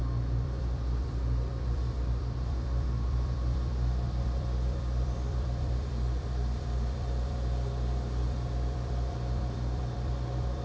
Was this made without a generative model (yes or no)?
no